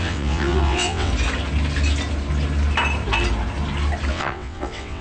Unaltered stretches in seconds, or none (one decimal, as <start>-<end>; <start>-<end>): 1.1-4.1